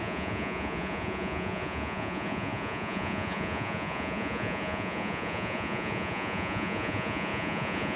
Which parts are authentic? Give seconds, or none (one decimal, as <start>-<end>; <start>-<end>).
none